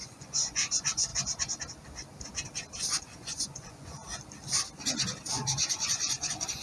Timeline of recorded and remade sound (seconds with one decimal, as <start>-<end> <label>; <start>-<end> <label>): 0.0-1.1 remade; 1.1-3.0 recorded; 3.0-4.0 remade; 4.0-5.3 recorded; 5.3-6.6 remade